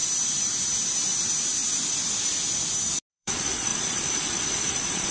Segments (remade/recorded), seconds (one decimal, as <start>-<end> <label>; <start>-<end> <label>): 0.0-3.1 recorded; 3.1-5.1 remade